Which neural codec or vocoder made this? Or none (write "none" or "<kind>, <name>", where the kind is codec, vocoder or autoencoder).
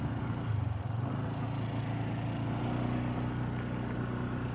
none